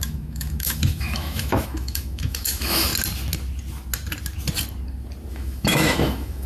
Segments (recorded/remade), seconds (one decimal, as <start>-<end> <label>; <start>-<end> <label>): 0.0-2.9 remade; 2.9-5.3 recorded; 5.3-6.5 remade